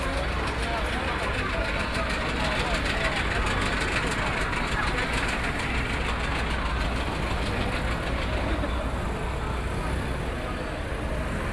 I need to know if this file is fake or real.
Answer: real